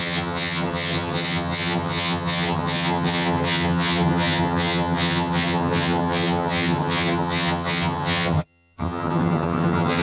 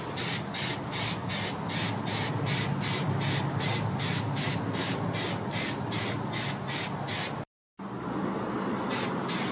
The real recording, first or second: second